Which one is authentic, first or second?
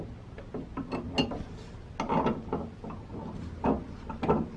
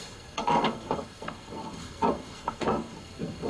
first